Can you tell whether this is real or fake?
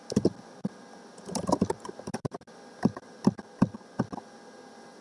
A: real